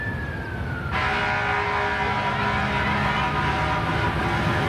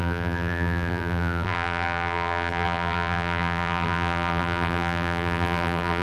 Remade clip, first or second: second